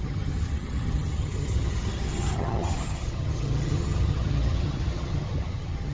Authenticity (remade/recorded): remade